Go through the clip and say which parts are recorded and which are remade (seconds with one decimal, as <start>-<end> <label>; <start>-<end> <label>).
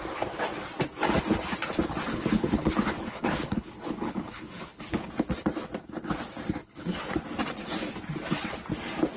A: 0.0-2.1 recorded; 2.1-5.1 remade; 5.1-6.6 recorded; 6.6-7.1 remade; 7.1-9.2 recorded